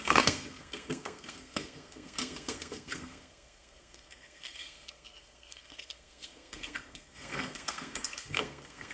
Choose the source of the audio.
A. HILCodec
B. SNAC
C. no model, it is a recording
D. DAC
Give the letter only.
B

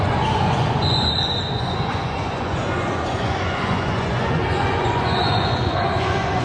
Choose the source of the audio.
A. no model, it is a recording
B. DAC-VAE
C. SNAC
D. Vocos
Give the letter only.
D